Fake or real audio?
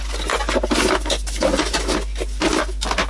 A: real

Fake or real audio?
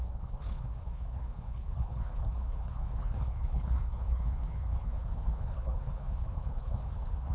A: fake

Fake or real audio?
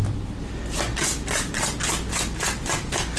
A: real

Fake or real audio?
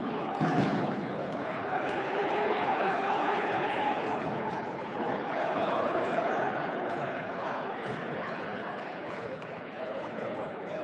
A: fake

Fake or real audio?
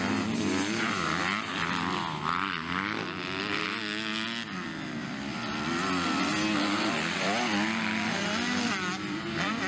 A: real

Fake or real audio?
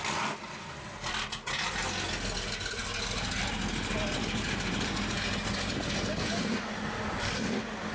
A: real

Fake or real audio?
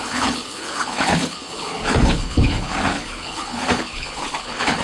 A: fake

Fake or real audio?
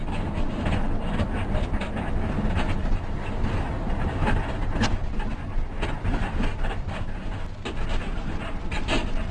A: real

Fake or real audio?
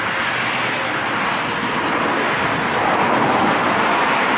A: real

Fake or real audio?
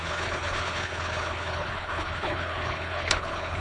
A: fake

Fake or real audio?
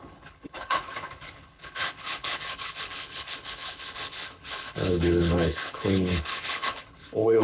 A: fake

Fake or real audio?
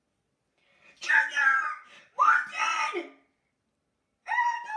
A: real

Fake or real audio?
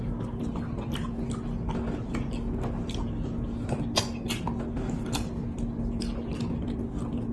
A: real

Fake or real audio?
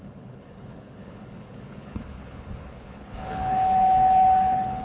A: fake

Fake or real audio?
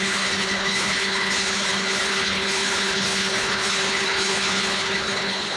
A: fake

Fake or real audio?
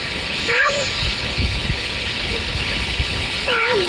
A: fake